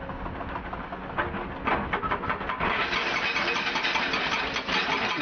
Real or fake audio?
real